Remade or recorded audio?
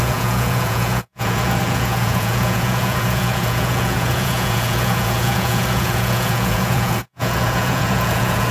remade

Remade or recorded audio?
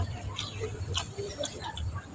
recorded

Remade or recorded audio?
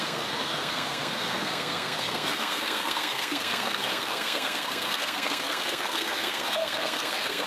remade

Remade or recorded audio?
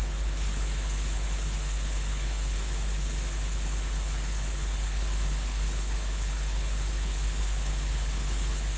remade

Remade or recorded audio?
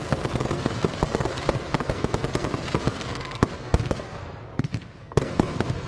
remade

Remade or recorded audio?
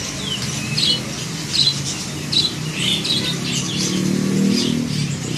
recorded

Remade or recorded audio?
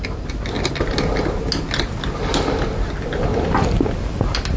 recorded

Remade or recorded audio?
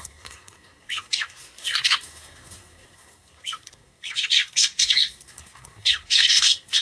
remade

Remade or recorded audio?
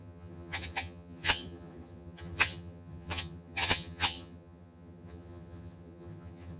remade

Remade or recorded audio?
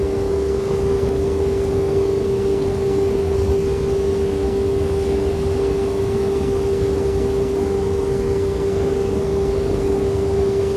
remade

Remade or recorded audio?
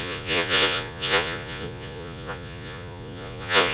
remade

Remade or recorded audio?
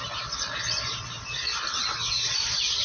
remade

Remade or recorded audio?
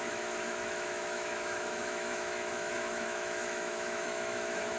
remade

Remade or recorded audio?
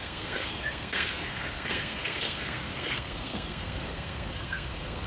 remade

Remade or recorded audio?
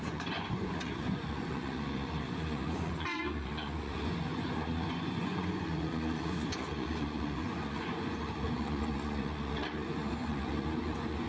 remade